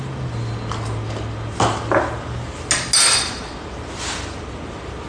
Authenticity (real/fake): real